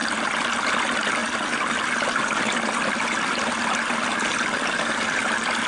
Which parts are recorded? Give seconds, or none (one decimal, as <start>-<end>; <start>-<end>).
0.0-5.7